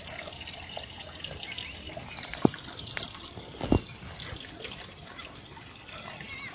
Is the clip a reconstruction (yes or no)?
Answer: no